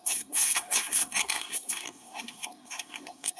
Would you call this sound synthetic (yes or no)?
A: yes